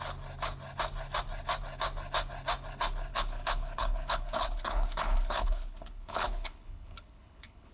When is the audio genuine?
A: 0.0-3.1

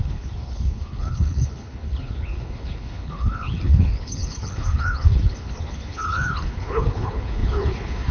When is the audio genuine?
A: none

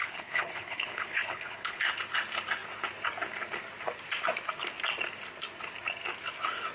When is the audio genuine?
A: 1.8-6.7

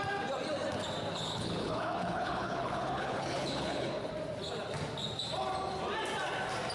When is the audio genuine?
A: 0.0-1.1; 4.1-6.7

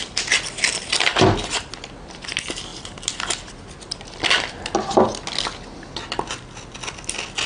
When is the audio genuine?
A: 0.0-7.5